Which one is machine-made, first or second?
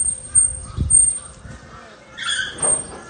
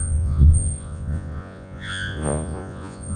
second